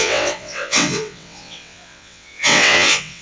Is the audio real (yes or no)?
no